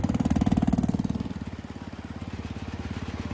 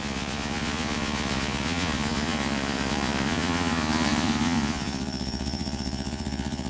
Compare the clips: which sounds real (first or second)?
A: first